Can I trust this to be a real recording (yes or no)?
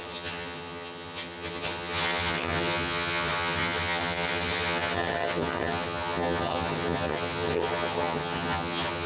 no